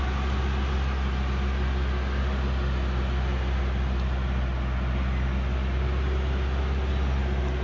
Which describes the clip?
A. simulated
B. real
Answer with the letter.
B